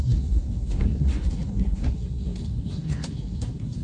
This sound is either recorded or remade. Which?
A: remade